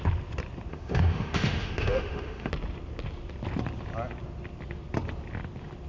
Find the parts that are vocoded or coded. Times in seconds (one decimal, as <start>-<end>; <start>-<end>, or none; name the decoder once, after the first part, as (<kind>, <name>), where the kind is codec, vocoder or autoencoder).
0.7-2.5 (autoencoder, DAC-VAE)